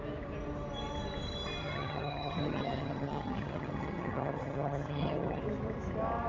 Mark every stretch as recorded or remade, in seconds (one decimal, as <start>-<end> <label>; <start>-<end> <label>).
0.0-1.6 recorded; 1.6-5.4 remade; 5.4-6.3 recorded